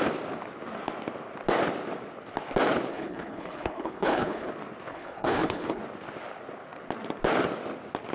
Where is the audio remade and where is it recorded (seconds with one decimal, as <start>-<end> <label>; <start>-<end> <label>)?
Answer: 0.0-2.9 recorded; 2.9-4.5 remade; 4.5-4.9 recorded; 4.9-5.8 remade; 5.8-8.1 recorded